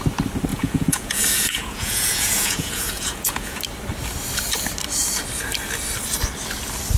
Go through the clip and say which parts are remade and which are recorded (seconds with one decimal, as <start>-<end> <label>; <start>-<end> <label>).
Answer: 0.0-0.5 recorded; 0.5-3.6 remade; 3.6-7.0 recorded